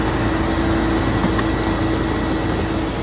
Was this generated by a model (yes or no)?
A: no